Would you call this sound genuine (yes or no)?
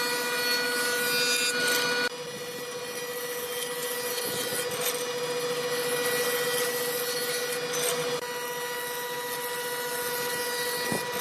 yes